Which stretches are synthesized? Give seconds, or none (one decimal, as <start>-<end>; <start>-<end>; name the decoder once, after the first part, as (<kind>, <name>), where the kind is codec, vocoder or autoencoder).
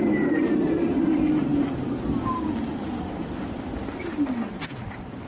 none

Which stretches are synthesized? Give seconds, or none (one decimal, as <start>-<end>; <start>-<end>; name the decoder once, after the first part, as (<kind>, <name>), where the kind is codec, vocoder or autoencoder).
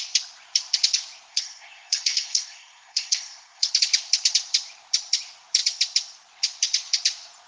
1.3-3.7 (codec, SNAC)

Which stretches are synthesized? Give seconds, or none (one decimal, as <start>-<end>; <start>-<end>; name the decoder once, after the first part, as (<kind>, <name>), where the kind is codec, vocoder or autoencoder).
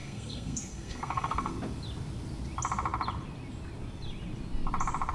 0.0-1.5 (codec, SNAC)